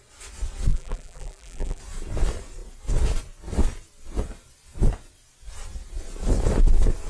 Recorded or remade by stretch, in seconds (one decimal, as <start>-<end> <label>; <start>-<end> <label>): 0.0-0.7 recorded; 0.7-1.8 remade; 1.8-7.1 recorded